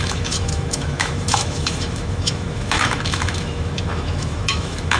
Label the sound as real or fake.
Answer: fake